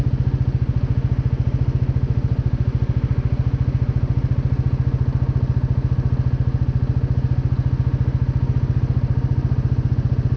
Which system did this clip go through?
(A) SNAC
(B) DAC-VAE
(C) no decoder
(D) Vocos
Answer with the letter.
C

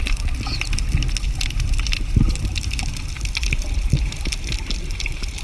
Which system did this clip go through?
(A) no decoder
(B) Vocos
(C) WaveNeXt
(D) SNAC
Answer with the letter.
A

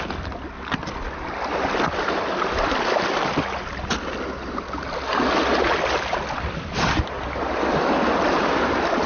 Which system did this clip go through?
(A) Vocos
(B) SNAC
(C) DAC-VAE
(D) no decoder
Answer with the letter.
D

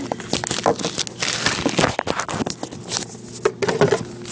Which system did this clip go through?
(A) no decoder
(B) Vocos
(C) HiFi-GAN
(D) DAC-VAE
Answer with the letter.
A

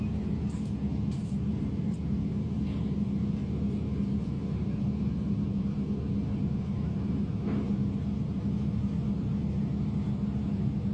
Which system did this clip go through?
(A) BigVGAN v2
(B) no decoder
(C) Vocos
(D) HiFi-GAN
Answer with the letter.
B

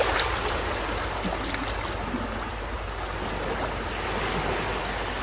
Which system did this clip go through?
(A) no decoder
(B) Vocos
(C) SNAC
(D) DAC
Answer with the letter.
A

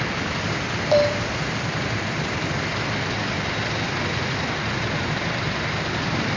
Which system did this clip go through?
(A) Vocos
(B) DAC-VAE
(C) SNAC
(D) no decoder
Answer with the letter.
D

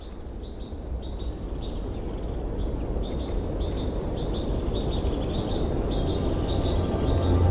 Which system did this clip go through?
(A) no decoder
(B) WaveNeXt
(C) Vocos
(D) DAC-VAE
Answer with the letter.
A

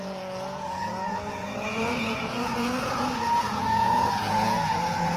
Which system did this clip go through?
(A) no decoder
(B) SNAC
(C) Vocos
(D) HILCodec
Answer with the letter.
C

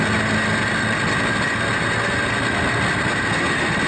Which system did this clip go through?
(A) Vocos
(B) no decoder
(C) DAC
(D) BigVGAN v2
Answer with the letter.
B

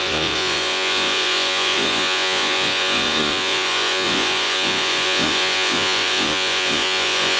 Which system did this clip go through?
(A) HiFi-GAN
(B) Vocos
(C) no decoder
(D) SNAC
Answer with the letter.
B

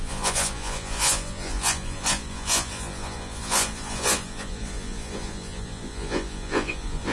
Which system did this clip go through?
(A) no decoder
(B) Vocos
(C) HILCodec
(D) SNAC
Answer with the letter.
B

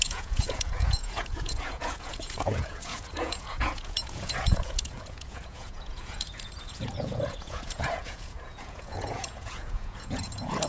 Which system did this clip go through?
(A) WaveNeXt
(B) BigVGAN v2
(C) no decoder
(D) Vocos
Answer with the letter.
D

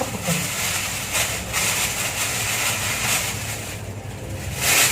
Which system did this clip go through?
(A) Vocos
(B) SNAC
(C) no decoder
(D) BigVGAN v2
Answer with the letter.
C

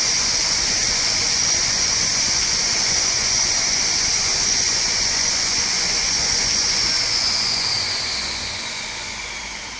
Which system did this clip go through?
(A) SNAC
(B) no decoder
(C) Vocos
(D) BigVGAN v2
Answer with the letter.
C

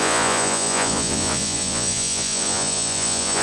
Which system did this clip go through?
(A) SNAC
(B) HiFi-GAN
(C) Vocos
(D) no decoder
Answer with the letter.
C